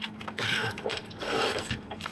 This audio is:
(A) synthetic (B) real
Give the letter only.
A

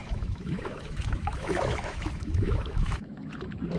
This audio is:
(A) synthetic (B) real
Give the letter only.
A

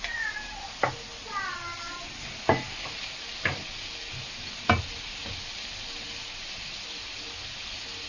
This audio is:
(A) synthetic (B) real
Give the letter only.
B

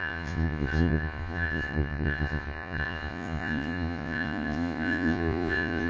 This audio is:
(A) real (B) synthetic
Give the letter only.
B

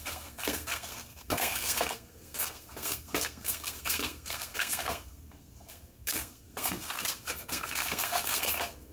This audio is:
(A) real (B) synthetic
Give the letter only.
B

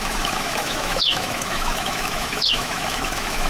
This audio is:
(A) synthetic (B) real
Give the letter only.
A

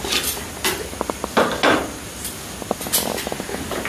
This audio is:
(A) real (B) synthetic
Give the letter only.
A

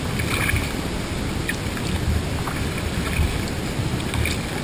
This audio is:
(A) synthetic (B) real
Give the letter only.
B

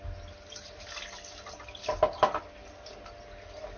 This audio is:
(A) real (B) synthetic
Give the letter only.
A